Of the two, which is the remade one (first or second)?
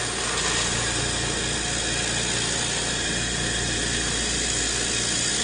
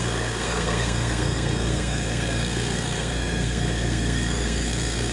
second